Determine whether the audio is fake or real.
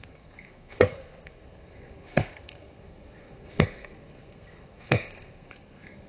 fake